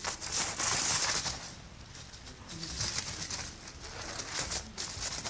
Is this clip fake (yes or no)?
no